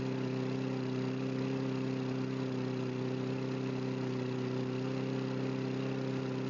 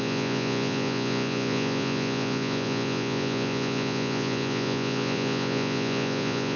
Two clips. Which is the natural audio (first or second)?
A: first